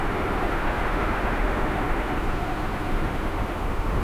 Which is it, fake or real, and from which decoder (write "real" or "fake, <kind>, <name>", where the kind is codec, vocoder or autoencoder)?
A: fake, autoencoder, DAC-VAE